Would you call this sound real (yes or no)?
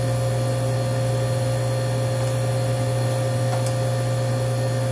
yes